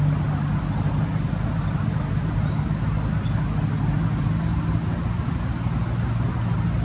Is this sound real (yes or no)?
yes